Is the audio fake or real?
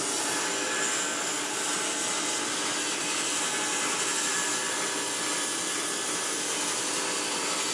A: real